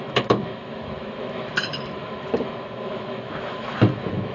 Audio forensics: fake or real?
fake